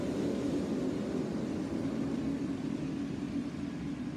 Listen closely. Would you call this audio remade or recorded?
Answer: recorded